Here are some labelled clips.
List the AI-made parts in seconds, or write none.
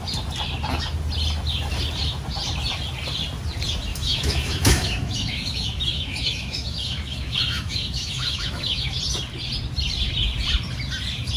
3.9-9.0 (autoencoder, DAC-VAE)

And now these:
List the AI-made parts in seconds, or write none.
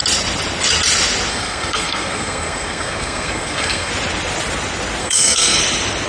1.3-3.9 (codec, SNAC); 5.0-5.6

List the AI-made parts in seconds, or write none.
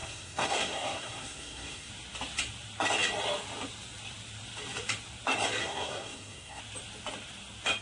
0.0-1.9 (codec, SNAC); 5.6-6.6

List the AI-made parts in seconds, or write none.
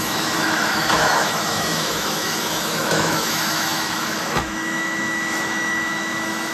0.0-6.5 (autoencoder, DAC-VAE)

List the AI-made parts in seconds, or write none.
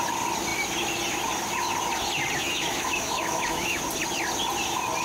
2.4-3.8 (autoencoder, DAC-VAE)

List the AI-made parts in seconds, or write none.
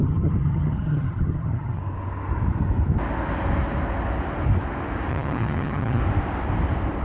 0.0-1.8 (vocoder, HiFi-GAN); 5.1-6.0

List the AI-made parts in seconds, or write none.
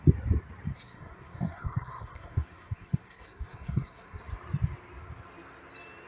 0.7-4.2 (codec, SNAC)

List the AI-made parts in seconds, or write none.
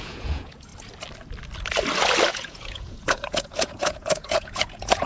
0.0-0.7 (vocoder, Vocos); 2.3-5.1